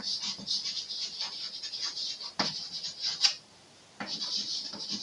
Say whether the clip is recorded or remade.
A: recorded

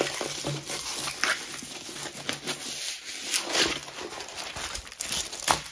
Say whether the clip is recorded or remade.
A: recorded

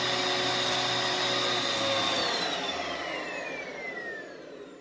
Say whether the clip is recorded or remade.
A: recorded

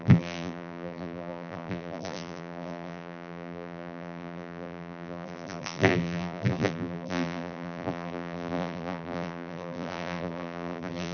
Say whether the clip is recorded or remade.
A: remade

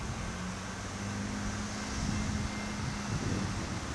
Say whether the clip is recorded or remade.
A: recorded